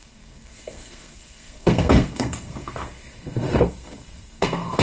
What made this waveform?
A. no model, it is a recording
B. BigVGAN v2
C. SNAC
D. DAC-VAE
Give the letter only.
C